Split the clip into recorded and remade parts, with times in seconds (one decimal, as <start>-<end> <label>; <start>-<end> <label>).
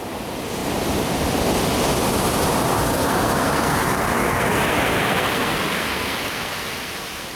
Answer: 0.0-2.7 recorded; 2.7-7.4 remade